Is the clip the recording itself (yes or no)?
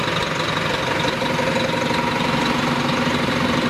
yes